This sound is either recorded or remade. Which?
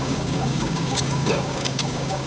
remade